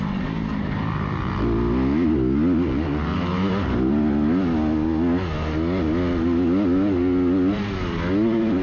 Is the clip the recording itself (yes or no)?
yes